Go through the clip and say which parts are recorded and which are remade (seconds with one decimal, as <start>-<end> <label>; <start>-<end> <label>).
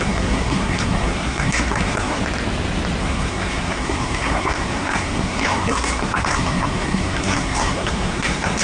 0.0-2.2 remade; 2.2-3.0 recorded; 3.0-8.6 remade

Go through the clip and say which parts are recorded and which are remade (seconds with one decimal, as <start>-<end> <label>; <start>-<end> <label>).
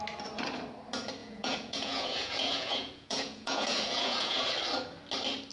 0.0-1.2 recorded; 1.2-4.5 remade; 4.5-5.5 recorded